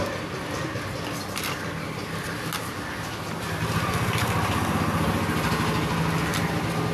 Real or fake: real